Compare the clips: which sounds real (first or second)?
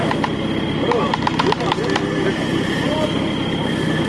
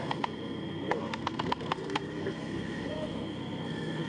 first